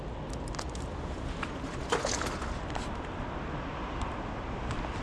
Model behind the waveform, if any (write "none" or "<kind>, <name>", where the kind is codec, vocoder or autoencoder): none